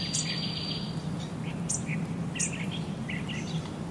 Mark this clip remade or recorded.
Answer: remade